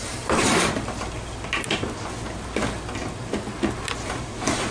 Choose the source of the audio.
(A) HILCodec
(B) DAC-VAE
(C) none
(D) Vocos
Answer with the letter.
C